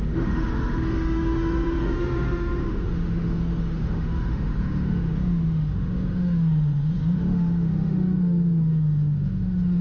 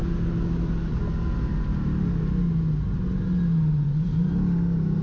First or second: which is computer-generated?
first